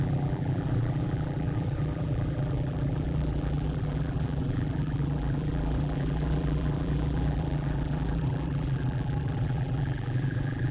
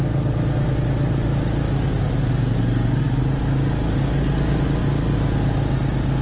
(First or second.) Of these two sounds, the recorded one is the second